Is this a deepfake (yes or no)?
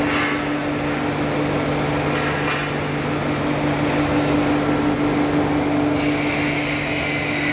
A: no